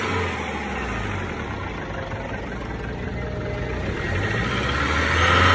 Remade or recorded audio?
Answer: recorded